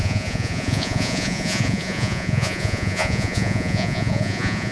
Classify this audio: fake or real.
fake